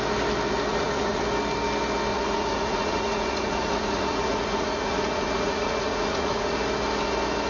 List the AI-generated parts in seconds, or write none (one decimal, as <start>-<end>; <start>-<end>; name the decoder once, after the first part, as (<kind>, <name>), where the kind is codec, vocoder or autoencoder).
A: 0.7-1.2 (vocoder, Vocos); 2.1-6.6